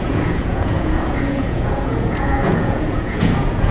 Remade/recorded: remade